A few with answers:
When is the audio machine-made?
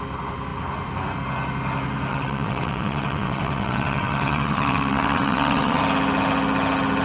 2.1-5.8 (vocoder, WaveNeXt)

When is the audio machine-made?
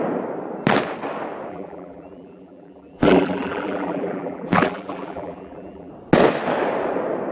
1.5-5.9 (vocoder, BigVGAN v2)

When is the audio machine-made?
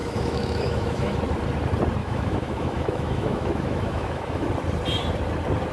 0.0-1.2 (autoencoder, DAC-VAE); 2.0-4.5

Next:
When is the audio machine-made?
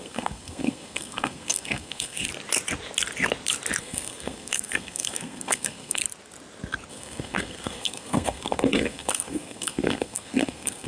0.0-2.3 (codec, SNAC); 3.8-6.0; 6.9-10.9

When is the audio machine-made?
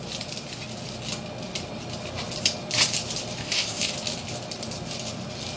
3.4-3.9 (codec, ZipCodec)